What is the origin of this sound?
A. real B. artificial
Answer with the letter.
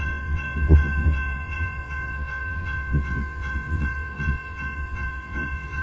B